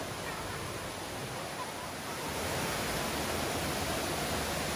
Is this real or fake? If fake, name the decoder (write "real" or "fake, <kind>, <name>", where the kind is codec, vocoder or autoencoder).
real